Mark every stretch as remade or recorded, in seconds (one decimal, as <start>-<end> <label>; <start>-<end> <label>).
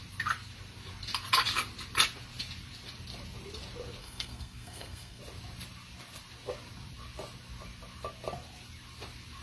0.0-4.0 recorded; 4.0-5.2 remade; 5.2-9.4 recorded